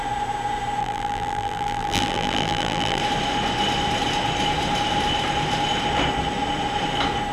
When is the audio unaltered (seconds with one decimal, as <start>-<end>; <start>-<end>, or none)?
0.0-0.8; 3.0-7.3